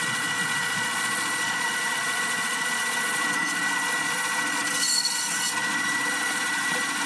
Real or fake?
fake